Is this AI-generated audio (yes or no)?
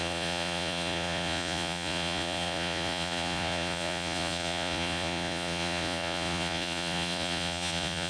yes